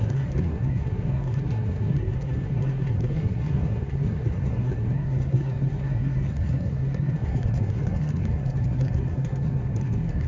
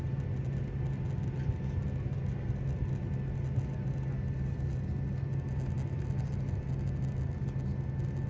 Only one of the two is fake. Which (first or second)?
first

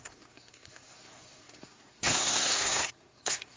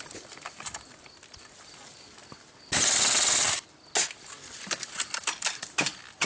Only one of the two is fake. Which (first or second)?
first